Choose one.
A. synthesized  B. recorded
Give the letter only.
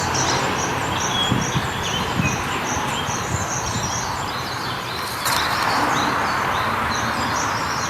A